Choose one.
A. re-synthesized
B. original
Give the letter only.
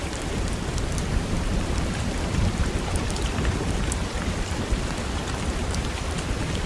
B